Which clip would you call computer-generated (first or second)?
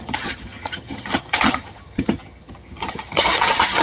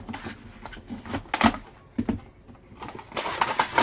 first